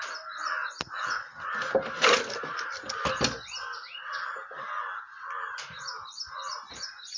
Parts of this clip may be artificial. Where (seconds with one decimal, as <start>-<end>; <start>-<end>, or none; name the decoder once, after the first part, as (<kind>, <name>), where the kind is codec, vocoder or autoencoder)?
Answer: none